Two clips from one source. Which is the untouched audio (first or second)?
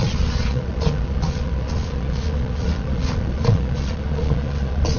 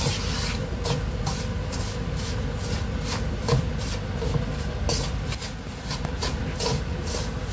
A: second